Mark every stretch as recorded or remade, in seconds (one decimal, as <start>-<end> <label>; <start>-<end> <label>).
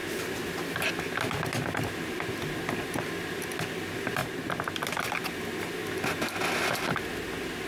0.0-7.7 recorded